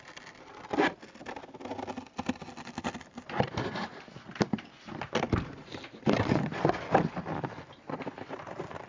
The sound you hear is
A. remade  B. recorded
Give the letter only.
B